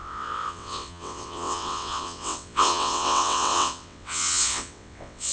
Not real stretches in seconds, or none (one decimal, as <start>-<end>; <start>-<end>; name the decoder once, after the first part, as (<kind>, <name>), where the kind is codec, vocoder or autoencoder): 0.0-5.3 (vocoder, WaveNeXt)